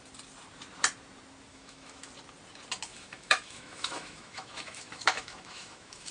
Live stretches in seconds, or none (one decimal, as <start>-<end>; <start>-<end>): 0.0-1.5; 2.1-2.9